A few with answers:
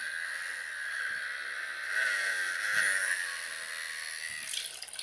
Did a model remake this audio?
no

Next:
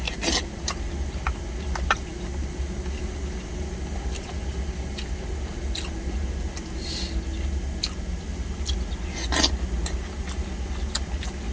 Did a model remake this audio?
no